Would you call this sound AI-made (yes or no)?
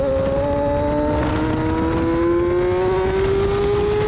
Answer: no